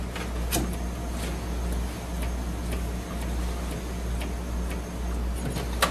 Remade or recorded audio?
recorded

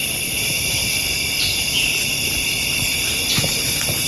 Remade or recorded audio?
recorded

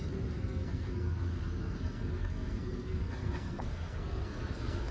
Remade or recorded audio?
remade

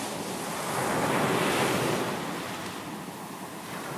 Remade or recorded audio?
recorded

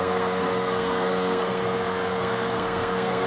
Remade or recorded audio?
remade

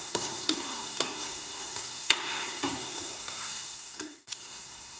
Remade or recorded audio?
remade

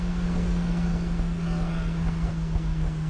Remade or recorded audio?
remade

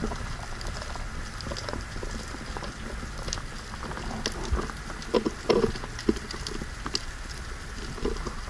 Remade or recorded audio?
recorded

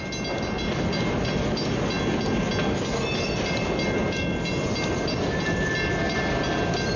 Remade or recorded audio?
recorded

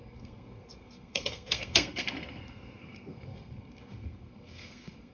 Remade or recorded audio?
remade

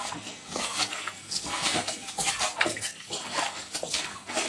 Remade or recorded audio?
remade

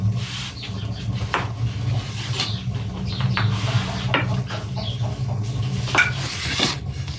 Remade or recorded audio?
recorded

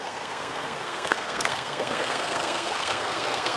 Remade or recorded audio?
remade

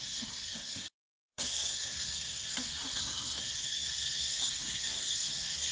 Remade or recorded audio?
remade